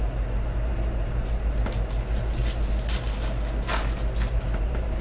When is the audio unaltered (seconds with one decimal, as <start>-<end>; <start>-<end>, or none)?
2.4-4.4